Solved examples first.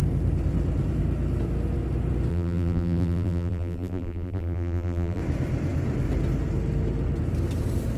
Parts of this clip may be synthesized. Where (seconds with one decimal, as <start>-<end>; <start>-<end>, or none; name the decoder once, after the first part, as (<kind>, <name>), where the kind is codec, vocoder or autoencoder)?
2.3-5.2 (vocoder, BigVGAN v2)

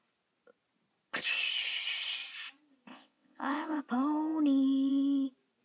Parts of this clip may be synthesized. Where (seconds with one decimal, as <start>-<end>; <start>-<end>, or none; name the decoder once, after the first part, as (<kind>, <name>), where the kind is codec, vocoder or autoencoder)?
2.9-3.8 (vocoder, WaveNeXt)

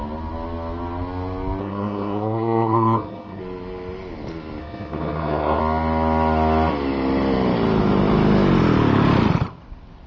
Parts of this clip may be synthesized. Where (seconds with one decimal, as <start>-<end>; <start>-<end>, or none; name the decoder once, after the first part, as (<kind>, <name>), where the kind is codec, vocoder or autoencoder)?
1.6-3.4 (codec, SNAC); 4.6-5.6

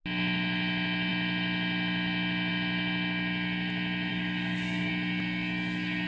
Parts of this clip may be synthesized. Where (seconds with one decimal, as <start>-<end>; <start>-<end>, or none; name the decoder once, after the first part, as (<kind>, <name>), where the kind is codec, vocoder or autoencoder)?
4.1-4.9 (codec, DAC)

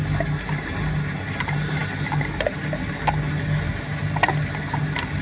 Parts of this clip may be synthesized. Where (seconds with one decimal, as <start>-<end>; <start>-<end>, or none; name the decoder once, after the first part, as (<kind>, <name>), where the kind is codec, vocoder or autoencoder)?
none